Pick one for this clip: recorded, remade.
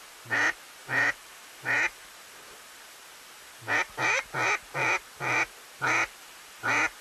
recorded